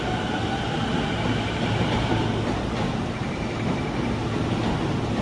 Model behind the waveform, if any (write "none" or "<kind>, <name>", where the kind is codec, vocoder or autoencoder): none